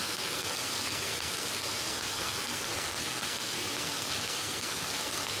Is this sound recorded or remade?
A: remade